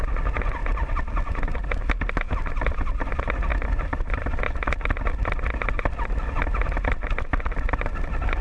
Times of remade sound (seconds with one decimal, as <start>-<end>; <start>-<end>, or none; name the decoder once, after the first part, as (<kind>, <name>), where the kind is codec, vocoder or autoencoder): none